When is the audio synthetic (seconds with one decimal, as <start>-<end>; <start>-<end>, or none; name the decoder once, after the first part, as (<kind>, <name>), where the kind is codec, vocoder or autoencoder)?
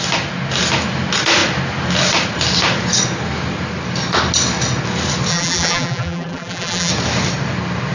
5.3-6.9 (vocoder, BigVGAN v2)